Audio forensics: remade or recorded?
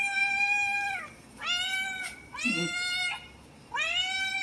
recorded